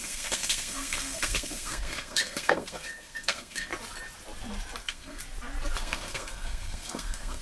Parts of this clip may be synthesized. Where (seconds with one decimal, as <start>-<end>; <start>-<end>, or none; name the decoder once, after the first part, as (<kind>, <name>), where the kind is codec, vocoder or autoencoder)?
0.0-3.7 (codec, SNAC); 4.8-5.2; 5.8-7.4